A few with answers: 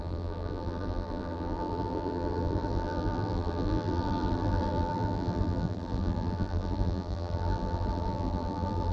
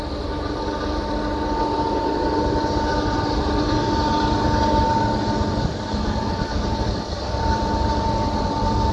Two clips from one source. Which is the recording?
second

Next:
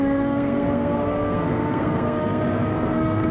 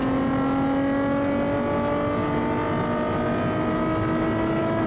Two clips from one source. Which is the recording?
second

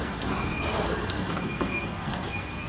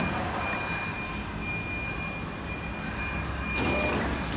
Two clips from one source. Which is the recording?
second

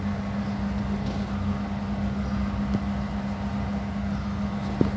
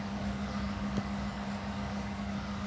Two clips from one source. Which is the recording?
first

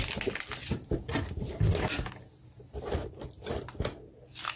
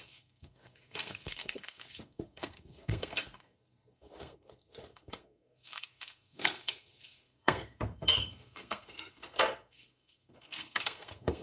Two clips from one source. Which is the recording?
first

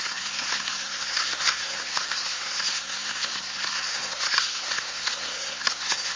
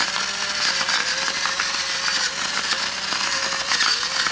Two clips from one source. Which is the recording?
second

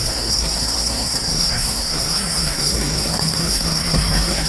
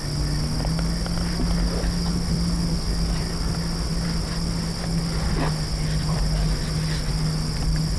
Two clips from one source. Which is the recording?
second